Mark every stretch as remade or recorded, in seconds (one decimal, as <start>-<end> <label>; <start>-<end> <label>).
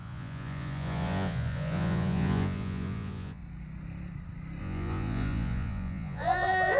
0.0-3.4 remade; 3.4-4.6 recorded; 4.6-6.8 remade